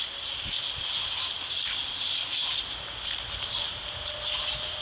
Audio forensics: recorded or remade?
recorded